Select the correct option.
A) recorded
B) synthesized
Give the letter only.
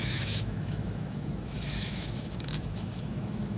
B